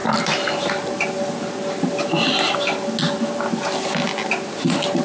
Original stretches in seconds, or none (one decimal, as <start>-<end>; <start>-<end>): 0.0-5.0